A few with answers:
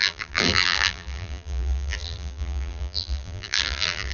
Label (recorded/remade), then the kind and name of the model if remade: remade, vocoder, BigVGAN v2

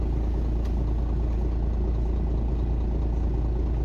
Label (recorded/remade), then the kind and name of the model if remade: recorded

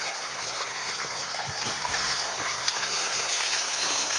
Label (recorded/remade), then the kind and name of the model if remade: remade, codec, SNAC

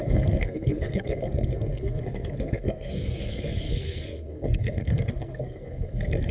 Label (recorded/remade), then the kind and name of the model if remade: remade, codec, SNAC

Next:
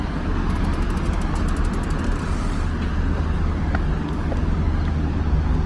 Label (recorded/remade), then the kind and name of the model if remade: recorded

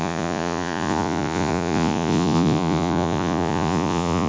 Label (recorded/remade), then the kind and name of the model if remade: remade, vocoder, Vocos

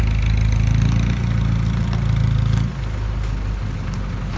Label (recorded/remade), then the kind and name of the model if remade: recorded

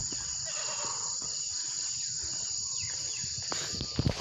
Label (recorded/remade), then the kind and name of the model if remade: recorded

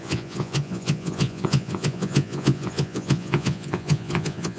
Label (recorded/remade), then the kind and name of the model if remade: remade, vocoder, Vocos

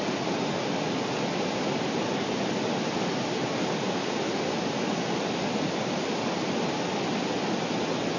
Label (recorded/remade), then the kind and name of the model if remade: recorded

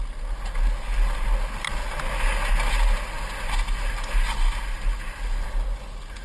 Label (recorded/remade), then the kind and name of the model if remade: recorded